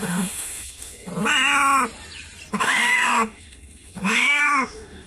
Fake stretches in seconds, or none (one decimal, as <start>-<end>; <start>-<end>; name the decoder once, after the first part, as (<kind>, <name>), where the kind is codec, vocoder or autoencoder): 0.0-1.1 (autoencoder, DAC-VAE); 2.5-5.1